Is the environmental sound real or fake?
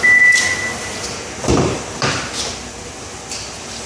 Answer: real